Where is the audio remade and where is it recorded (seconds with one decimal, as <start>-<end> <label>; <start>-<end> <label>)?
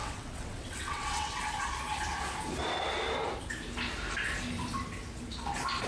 0.0-1.4 remade; 1.4-5.9 recorded